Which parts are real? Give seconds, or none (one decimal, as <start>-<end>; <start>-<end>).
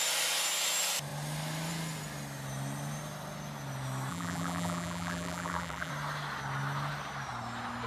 0.0-4.1; 5.9-7.9